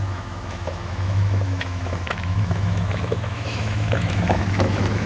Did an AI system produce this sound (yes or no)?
yes